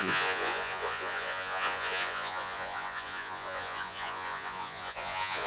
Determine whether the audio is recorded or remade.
remade